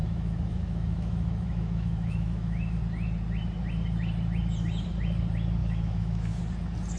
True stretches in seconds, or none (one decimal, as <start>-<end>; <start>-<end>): 2.8-5.6; 6.4-7.0